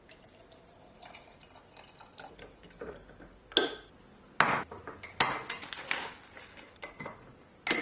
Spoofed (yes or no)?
no